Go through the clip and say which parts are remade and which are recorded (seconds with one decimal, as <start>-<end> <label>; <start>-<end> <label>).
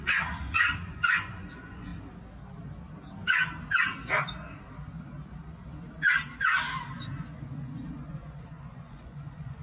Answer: 0.0-1.9 remade; 1.9-7.1 recorded; 7.1-9.6 remade